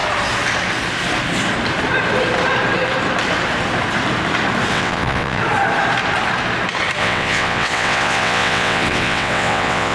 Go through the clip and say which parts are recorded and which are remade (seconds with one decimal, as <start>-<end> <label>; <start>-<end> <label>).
0.0-4.7 recorded; 4.7-5.4 remade; 5.4-7.0 recorded; 7.0-9.9 remade